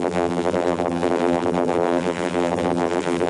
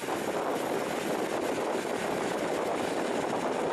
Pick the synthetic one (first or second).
first